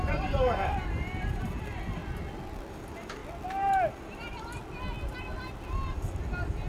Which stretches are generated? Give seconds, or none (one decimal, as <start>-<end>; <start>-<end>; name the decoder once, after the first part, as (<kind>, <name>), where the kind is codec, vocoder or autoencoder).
0.0-2.0 (vocoder, BigVGAN v2); 2.7-3.2; 3.9-4.6; 5.7-6.7